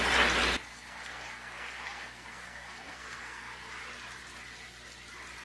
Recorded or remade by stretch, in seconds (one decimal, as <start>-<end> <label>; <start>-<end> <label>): 0.0-0.7 recorded; 0.7-3.7 remade; 3.7-5.4 recorded